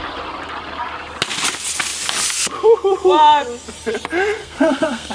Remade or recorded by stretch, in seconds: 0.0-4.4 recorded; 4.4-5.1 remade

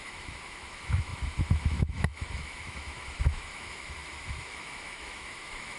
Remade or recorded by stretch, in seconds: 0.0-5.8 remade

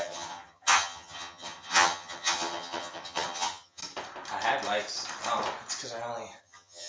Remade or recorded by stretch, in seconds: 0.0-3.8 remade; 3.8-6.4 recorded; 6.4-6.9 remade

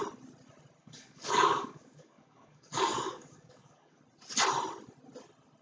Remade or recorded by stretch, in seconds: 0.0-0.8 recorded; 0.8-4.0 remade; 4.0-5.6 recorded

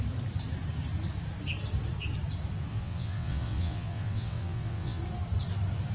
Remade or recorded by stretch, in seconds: 0.0-2.7 recorded; 2.7-5.0 remade; 5.0-5.9 recorded